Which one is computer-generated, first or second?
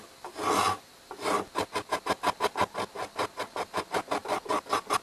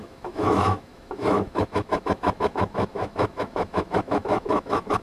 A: second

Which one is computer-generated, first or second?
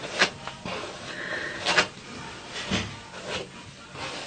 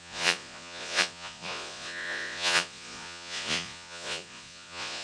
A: second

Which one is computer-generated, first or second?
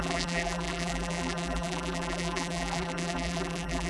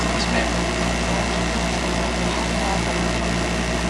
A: first